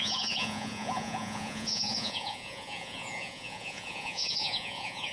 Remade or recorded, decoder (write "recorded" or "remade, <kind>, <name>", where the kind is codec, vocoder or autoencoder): remade, vocoder, Vocos